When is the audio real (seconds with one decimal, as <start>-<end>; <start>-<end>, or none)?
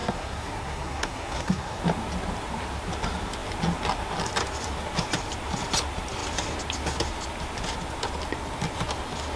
1.8-9.4